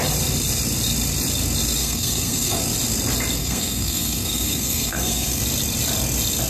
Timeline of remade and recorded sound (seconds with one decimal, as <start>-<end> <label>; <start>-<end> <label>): 0.0-1.8 recorded; 1.8-2.6 remade; 2.6-3.4 recorded; 3.4-5.4 remade; 5.4-6.5 recorded

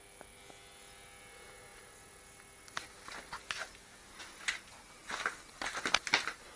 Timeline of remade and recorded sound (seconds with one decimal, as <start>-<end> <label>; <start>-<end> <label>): 0.0-6.6 recorded

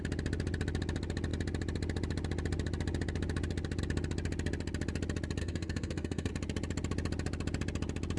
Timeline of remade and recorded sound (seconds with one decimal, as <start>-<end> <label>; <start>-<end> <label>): 0.0-5.4 recorded; 5.4-6.3 remade; 6.3-8.2 recorded